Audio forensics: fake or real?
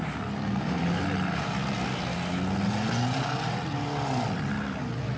real